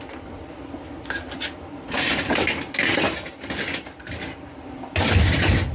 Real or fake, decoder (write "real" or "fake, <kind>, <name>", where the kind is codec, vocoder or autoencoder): fake, vocoder, BigVGAN v2